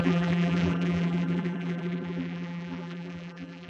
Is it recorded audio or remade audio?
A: remade